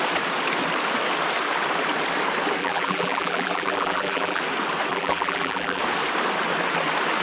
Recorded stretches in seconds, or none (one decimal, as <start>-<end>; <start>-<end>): 0.0-2.6; 4.4-4.9; 5.8-7.2